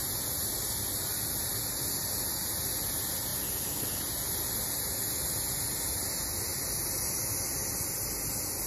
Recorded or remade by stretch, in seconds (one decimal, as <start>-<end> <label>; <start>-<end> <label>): 0.0-8.7 recorded